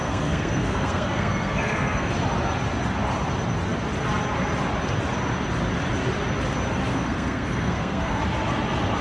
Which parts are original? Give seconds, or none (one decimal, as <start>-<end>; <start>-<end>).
2.1-6.9; 8.2-9.0